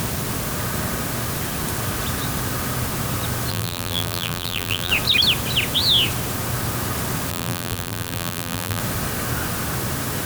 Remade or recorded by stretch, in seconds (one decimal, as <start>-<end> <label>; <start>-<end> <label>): 0.0-3.5 recorded; 3.5-4.9 remade; 4.9-7.3 recorded; 7.3-8.8 remade; 8.8-10.3 recorded